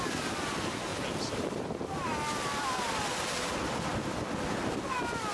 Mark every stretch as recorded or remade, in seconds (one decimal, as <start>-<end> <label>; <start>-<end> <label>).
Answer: 0.0-5.3 recorded